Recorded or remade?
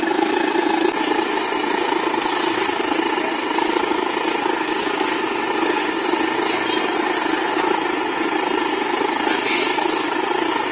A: recorded